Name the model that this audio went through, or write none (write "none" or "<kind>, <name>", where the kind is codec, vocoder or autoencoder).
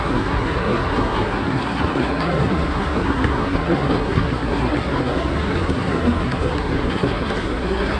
codec, SNAC